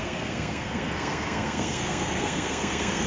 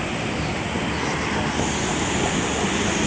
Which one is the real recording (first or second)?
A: second